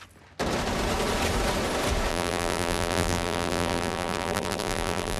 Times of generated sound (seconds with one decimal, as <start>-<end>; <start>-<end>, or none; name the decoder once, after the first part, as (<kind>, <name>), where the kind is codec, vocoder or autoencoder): 2.1-5.2 (vocoder, BigVGAN v2)